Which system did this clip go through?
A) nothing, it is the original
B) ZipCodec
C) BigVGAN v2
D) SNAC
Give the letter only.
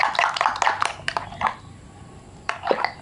A